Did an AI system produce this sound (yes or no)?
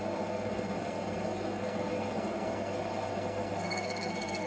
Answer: yes